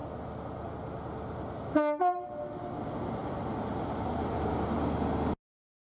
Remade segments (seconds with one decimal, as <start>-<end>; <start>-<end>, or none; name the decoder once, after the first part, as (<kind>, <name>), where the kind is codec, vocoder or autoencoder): 3.2-4.5 (vocoder, BigVGAN v2)